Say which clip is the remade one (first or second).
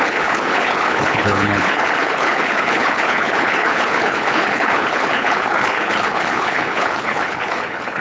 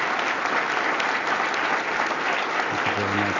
first